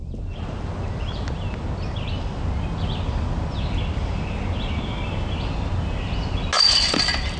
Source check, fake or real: real